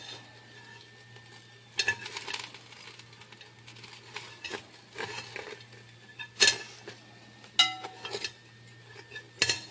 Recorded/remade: recorded